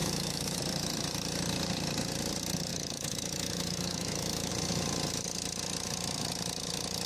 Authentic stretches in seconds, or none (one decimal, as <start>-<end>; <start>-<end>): 0.6-2.7; 4.5-7.1